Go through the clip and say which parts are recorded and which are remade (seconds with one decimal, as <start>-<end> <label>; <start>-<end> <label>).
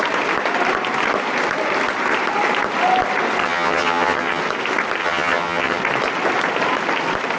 0.0-3.4 recorded; 3.4-4.4 remade; 4.4-5.0 recorded; 5.0-5.8 remade; 5.8-7.4 recorded